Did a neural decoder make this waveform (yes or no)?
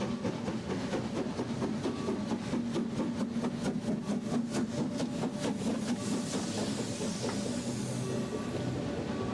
no